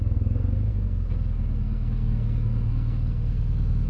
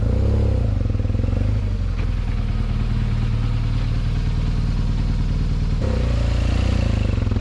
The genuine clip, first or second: second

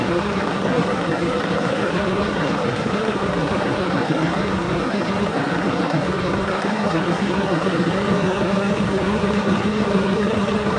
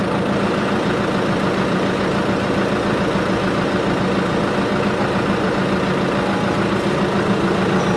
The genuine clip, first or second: second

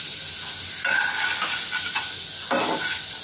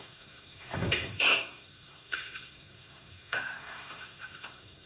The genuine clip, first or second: first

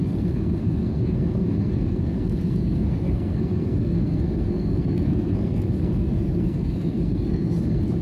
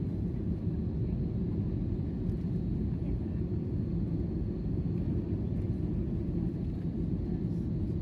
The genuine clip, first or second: second